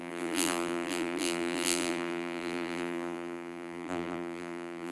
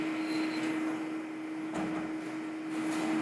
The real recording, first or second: second